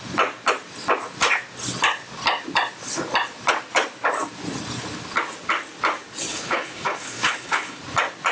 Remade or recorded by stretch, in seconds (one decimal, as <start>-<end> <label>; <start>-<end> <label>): 0.0-6.3 recorded; 6.3-7.8 remade; 7.8-8.3 recorded